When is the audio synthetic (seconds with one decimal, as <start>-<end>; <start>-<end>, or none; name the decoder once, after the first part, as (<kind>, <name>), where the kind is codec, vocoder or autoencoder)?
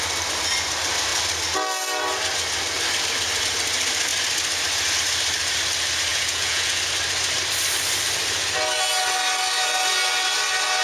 6.1-6.8 (vocoder, Vocos)